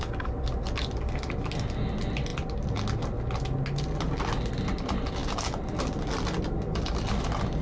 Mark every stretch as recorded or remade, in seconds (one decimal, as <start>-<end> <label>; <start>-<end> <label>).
0.0-7.6 recorded